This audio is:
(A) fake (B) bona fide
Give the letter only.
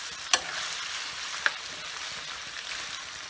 B